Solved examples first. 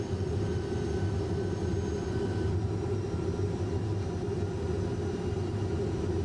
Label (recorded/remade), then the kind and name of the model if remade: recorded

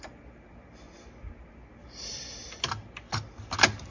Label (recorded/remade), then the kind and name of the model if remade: recorded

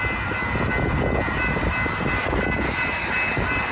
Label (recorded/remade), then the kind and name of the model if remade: recorded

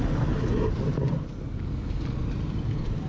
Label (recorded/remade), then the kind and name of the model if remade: recorded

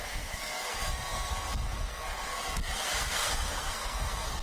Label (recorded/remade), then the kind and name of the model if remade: remade, codec, SNAC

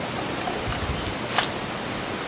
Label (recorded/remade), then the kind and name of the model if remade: recorded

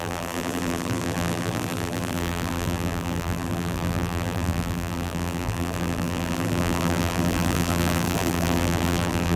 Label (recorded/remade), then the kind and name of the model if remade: remade, vocoder, BigVGAN v2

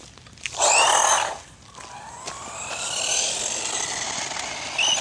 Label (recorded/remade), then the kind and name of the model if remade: recorded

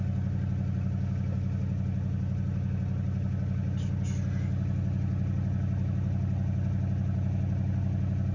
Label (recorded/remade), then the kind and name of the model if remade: recorded